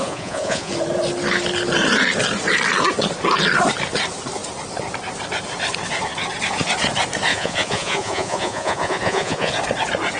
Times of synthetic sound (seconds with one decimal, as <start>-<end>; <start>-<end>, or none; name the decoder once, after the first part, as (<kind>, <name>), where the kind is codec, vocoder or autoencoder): 0.0-0.7 (vocoder, Vocos); 7.3-9.5